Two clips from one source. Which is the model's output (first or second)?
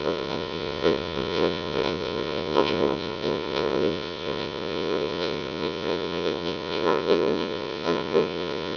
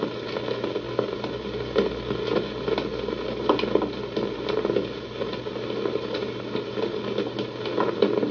first